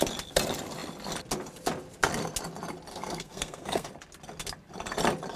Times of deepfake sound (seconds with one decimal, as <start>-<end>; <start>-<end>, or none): 2.9-3.9